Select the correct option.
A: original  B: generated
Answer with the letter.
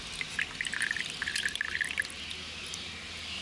A